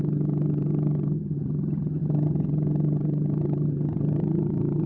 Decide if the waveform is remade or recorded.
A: remade